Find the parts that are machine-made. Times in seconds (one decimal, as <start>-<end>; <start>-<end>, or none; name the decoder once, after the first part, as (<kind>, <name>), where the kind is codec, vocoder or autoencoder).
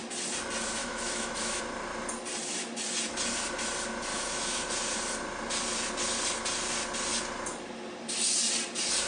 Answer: 0.8-1.6 (autoencoder, DAC-VAE); 4.1-4.7